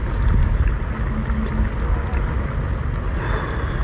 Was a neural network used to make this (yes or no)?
no